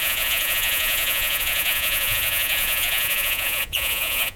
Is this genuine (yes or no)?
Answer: no